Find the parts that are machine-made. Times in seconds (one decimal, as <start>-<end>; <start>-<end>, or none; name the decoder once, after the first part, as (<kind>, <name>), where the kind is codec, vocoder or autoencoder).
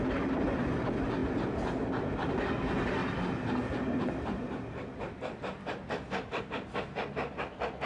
3.0-6.4 (vocoder, BigVGAN v2)